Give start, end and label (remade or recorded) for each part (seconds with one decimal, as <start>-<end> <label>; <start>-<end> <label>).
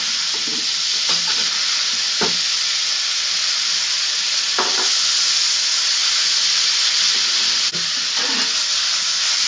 0.0-9.5 recorded